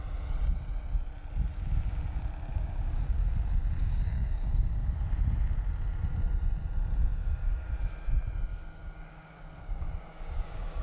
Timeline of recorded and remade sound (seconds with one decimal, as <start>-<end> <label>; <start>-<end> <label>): 0.0-2.5 recorded; 2.5-3.0 remade; 3.0-3.8 recorded; 3.8-5.0 remade; 5.0-7.1 recorded; 7.1-7.7 remade; 7.7-8.5 recorded; 8.5-10.8 remade